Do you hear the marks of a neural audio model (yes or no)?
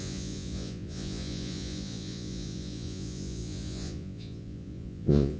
yes